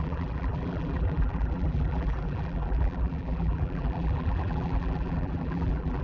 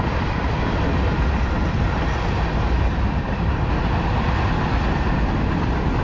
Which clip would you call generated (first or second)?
first